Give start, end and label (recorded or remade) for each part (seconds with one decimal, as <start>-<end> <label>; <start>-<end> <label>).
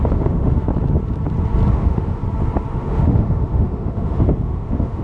0.0-0.7 remade; 0.7-1.7 recorded; 1.7-2.2 remade; 2.2-2.7 recorded; 2.7-5.0 remade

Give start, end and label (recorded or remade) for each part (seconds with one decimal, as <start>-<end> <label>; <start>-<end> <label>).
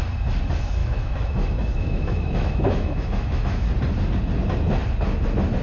0.0-0.8 recorded; 0.8-3.7 remade; 3.7-5.6 recorded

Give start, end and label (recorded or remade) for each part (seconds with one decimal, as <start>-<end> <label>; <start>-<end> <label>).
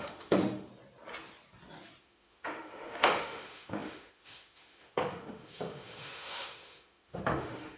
0.0-0.7 remade; 0.7-2.0 recorded; 2.0-7.8 remade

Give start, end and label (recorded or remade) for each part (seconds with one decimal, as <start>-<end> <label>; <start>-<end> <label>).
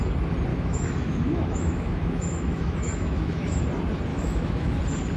0.0-0.5 recorded; 0.5-3.6 remade; 3.6-4.1 recorded; 4.1-4.8 remade; 4.8-5.2 recorded